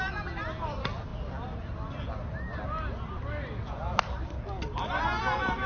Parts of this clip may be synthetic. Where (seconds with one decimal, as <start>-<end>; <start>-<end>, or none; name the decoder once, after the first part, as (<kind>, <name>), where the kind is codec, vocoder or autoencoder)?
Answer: none